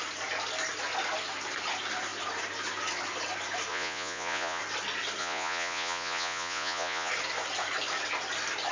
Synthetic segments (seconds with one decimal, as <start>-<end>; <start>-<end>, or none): 3.7-4.6; 5.2-7.1